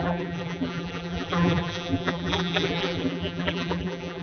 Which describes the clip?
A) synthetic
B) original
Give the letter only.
A